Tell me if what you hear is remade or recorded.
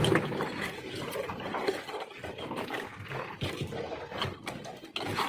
recorded